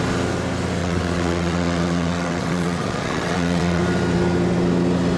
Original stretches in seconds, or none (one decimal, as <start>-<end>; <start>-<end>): 0.0-0.8; 3.8-5.2